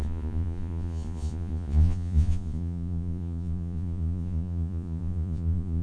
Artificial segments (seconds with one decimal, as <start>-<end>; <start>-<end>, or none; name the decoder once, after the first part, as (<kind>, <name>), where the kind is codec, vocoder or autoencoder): 0.0-5.8 (vocoder, Vocos)